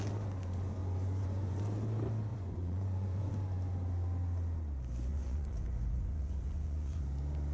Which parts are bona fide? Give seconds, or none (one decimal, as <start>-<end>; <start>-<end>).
0.0-0.8; 1.6-2.3; 3.3-5.1; 7.0-7.5